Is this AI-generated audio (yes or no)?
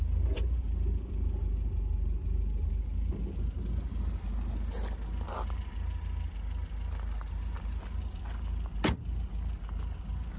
no